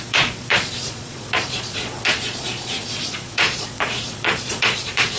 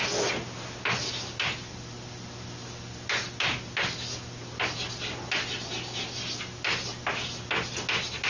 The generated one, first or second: first